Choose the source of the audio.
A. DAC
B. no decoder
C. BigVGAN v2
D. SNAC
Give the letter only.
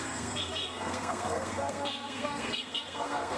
D